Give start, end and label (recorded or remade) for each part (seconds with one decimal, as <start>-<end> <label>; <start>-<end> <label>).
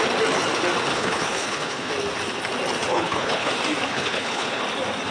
0.0-0.9 recorded; 0.9-1.9 remade; 1.9-2.9 recorded; 2.9-3.5 remade; 3.5-3.9 recorded; 3.9-4.6 remade; 4.6-5.1 recorded